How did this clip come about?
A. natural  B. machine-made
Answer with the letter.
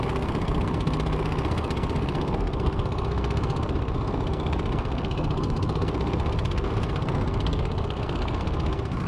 B